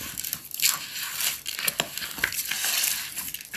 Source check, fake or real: real